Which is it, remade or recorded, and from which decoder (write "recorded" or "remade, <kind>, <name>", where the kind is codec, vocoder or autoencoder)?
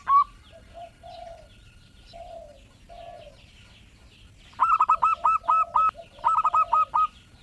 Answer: recorded